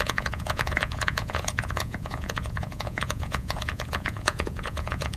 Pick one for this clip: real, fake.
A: fake